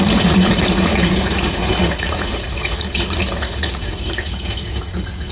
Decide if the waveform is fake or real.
fake